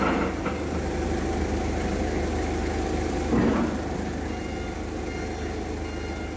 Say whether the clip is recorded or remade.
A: recorded